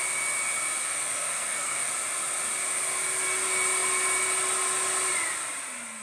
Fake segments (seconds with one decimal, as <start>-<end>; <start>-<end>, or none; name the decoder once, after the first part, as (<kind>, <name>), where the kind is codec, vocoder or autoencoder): 0.8-1.9 (codec, SNAC)